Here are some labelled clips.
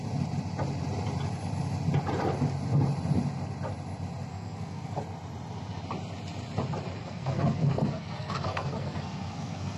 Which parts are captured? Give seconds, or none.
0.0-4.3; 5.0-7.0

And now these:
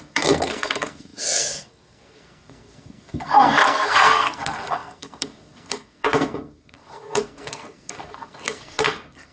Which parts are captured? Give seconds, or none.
none

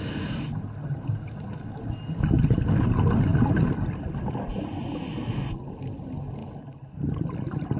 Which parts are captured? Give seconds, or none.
0.0-7.8